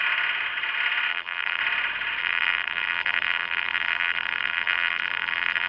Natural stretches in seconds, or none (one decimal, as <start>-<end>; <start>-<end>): 0.0-1.1; 1.6-2.2